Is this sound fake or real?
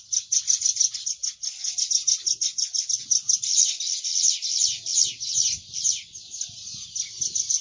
real